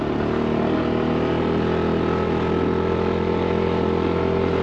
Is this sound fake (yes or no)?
no